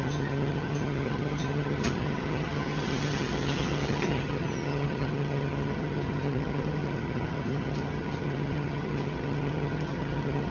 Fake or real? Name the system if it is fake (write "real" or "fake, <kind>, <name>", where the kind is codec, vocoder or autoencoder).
fake, vocoder, HiFi-GAN